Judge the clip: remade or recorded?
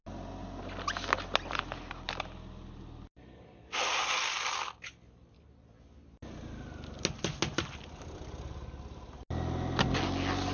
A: recorded